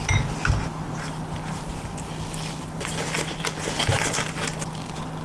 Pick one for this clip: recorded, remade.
recorded